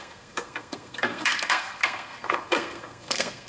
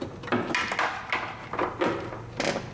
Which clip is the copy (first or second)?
first